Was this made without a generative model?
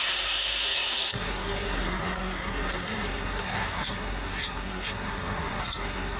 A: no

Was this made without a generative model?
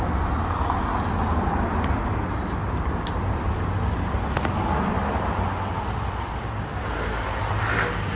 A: yes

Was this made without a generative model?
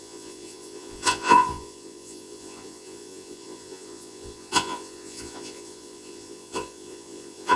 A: no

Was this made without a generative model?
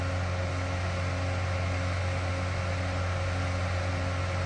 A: yes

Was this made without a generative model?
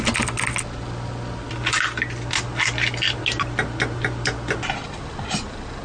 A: yes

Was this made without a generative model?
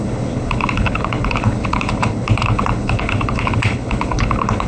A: no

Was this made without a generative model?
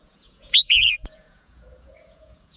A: no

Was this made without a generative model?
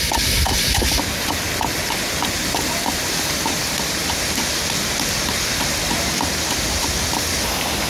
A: yes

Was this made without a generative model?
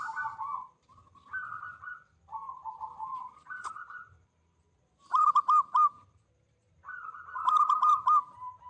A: no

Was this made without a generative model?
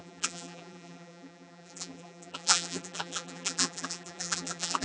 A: no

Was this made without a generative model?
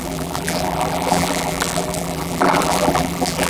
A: no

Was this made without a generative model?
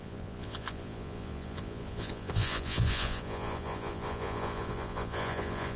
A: no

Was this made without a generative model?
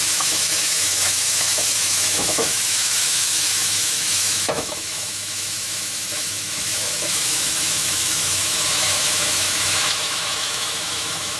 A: no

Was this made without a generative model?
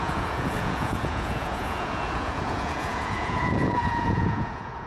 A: no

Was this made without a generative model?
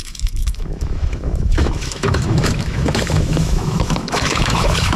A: no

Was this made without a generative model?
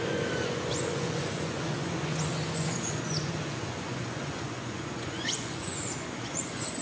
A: no